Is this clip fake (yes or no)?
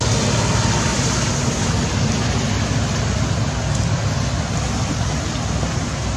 no